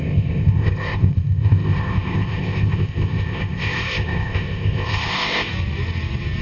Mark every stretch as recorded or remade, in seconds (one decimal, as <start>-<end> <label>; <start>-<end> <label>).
0.0-5.5 remade; 5.5-6.4 recorded